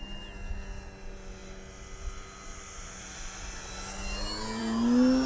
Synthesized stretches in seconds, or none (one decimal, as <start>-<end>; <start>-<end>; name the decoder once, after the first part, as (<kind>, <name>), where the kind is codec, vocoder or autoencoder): none